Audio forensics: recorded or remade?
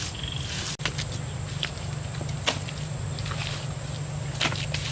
recorded